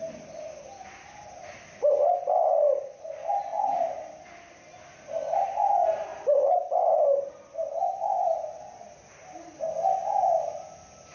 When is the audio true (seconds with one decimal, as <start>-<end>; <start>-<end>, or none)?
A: 0.0-11.1

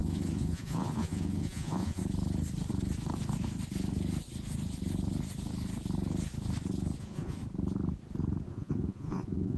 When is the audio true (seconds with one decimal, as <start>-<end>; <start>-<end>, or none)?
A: 2.0-7.0; 7.4-8.5

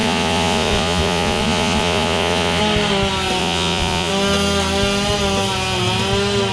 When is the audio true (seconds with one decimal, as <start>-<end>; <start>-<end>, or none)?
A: 2.6-3.4; 4.1-6.5

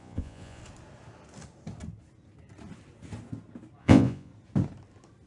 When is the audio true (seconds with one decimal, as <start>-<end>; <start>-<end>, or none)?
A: 0.6-3.8; 4.3-5.3

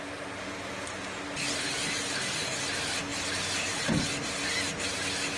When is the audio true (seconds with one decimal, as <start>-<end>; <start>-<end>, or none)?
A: 0.0-5.4

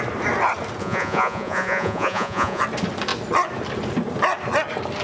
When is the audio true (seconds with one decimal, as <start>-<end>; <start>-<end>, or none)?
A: 0.0-0.8; 2.6-5.0

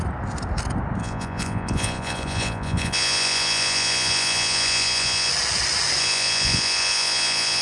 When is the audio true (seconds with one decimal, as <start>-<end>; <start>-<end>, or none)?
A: 0.0-1.0; 5.3-6.0